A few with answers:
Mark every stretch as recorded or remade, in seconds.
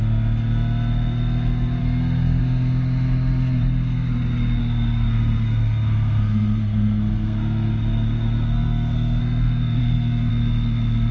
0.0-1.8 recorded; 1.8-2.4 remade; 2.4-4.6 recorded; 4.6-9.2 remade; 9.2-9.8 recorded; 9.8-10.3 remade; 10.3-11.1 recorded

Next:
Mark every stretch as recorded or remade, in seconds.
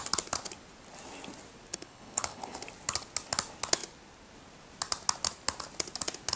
0.0-1.7 recorded; 1.7-2.6 remade; 2.6-6.4 recorded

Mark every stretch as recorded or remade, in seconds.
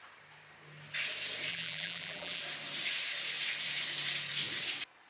0.0-1.5 recorded; 1.5-2.4 remade; 2.4-5.1 recorded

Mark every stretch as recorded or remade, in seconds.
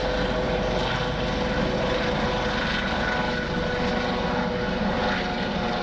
0.0-5.8 recorded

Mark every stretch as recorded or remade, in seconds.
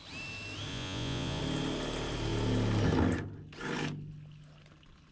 0.0-0.7 recorded; 0.7-1.4 remade; 1.4-5.1 recorded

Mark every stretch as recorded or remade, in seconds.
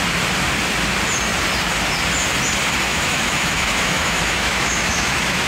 0.0-2.9 recorded; 2.9-5.5 remade